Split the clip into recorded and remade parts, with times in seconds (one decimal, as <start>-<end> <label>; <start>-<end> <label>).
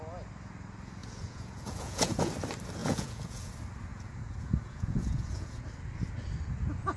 0.0-1.0 recorded; 1.0-2.3 remade; 2.3-2.8 recorded; 2.8-3.5 remade; 3.5-3.9 recorded; 3.9-5.6 remade; 5.6-7.0 recorded